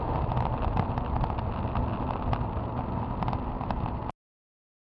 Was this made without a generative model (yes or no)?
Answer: yes